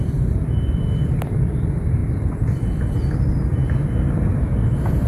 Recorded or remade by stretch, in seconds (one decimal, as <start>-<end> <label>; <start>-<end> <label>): 0.0-5.1 remade